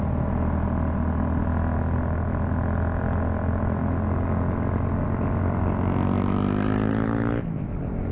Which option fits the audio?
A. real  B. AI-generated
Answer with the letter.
A